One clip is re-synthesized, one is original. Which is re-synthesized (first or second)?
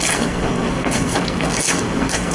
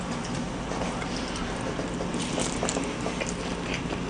first